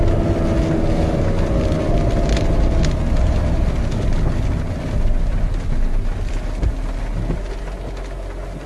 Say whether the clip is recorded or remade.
recorded